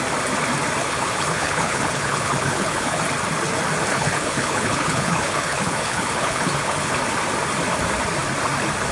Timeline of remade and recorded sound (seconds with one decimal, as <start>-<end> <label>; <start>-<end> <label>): 0.0-0.8 recorded; 0.8-3.0 remade; 3.0-3.9 recorded; 3.9-6.9 remade; 6.9-8.9 recorded